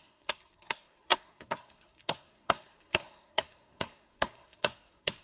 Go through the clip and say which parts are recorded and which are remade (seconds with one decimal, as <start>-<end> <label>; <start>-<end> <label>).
0.0-5.2 remade